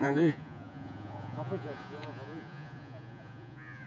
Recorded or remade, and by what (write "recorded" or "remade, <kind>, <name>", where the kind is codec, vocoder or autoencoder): remade, vocoder, Vocos